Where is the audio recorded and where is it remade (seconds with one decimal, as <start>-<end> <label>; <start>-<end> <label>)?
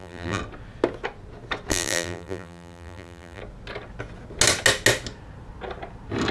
0.0-0.4 remade; 0.4-1.7 recorded; 1.7-3.4 remade; 3.4-6.3 recorded